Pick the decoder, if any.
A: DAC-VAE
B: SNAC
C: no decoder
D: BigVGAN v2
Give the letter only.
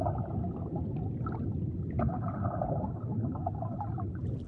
C